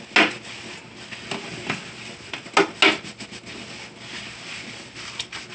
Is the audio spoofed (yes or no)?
no